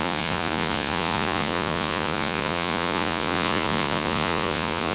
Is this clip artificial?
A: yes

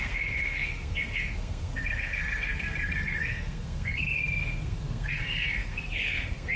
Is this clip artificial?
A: yes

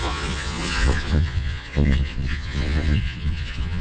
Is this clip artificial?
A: yes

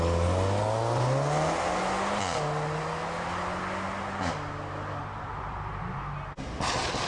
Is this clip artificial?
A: no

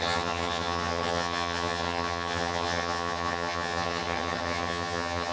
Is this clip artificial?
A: yes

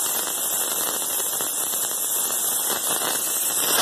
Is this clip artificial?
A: no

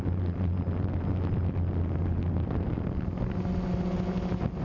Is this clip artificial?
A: no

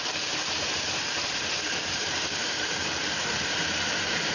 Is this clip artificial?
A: yes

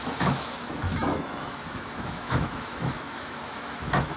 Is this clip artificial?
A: yes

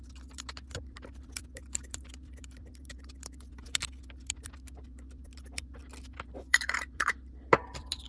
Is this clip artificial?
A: yes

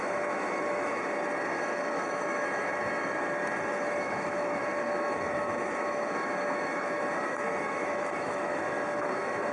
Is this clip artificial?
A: yes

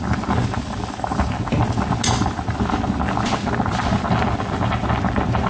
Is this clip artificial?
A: no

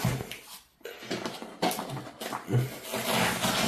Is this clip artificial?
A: no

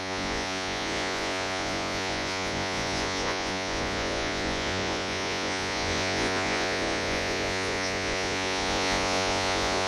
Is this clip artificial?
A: yes